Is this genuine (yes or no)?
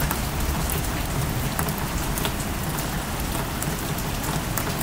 yes